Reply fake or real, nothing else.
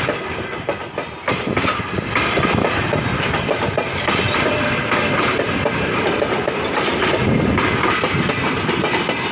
real